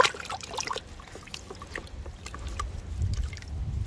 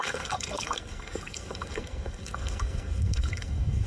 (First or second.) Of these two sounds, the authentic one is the first